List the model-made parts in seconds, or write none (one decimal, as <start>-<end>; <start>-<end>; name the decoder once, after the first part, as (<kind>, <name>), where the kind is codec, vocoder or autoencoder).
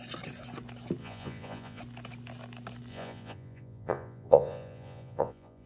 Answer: 1.0-1.8 (vocoder, Vocos); 2.9-5.7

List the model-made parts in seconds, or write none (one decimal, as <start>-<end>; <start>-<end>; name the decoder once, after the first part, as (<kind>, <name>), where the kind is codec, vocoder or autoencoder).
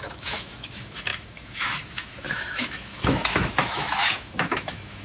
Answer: 0.0-5.0 (autoencoder, DAC-VAE)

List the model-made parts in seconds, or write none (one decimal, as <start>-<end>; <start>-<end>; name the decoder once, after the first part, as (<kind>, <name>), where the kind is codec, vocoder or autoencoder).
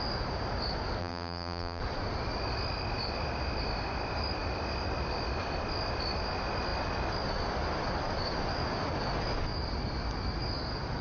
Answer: 1.0-1.8 (vocoder, BigVGAN v2)